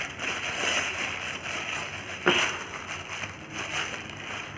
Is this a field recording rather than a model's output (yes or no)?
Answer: yes